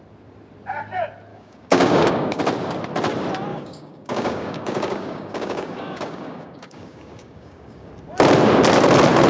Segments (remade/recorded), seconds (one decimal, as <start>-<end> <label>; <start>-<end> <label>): 0.0-1.3 recorded; 1.3-2.4 remade; 2.4-3.5 recorded; 3.5-7.9 remade; 7.9-9.3 recorded